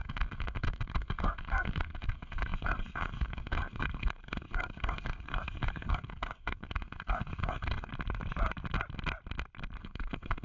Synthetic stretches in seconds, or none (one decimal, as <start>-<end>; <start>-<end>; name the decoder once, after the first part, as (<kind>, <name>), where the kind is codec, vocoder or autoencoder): 0.0-7.9 (codec, SNAC); 9.8-10.4

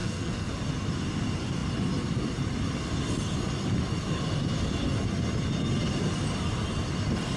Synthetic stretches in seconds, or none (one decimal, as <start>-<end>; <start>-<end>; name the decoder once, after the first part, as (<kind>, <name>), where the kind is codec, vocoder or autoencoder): 0.0-0.5 (codec, SNAC)